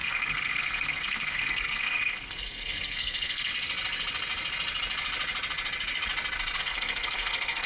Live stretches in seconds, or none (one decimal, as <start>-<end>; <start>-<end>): 3.5-6.6